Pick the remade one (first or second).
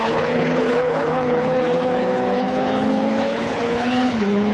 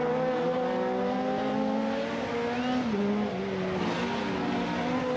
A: first